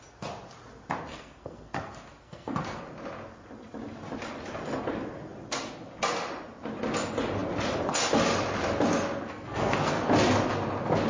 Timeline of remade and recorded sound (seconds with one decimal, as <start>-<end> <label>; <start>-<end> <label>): 0.0-1.1 recorded; 1.1-2.8 remade; 2.8-9.3 recorded; 9.3-10.0 remade; 10.0-11.1 recorded